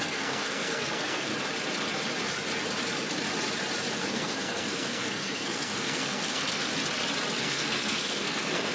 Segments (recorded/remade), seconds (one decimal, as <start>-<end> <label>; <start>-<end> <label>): 0.0-1.3 remade; 1.3-4.0 recorded; 4.0-6.7 remade; 6.7-7.4 recorded; 7.4-8.7 remade